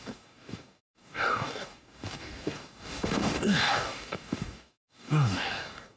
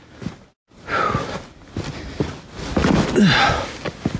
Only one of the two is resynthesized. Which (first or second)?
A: first